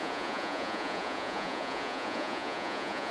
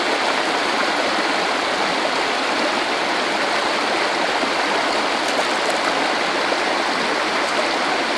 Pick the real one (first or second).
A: second